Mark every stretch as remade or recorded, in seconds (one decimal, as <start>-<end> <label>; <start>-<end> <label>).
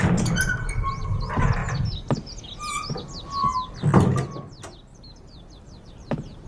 0.0-4.9 recorded; 4.9-6.5 remade